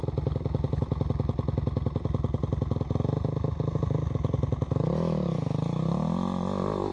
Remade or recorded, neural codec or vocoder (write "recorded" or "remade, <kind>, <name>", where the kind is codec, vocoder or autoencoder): recorded